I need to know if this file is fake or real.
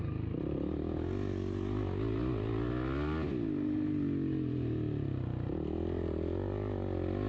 real